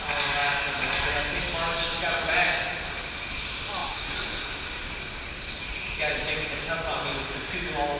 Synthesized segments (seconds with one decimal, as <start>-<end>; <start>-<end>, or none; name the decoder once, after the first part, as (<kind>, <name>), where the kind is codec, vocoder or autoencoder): none